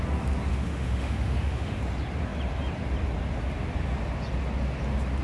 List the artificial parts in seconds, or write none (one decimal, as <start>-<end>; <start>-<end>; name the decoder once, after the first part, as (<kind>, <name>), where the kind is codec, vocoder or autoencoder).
0.5-1.8 (autoencoder, DAC-VAE)